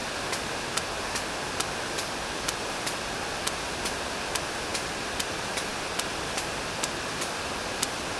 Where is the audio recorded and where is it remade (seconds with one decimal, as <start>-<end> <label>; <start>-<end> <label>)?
0.0-8.2 recorded